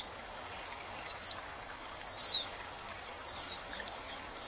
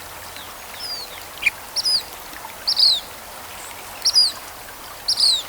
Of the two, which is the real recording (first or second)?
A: second